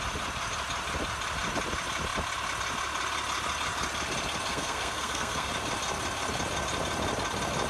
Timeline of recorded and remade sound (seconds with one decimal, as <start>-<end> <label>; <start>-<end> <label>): 0.0-4.5 recorded; 4.5-5.5 remade; 5.5-7.7 recorded